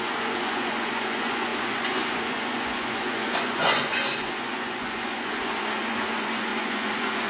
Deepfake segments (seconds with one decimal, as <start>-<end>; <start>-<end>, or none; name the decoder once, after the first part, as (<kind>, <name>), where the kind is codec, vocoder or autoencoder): 0.0-7.3 (vocoder, Vocos)